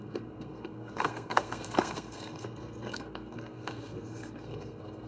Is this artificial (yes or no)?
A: yes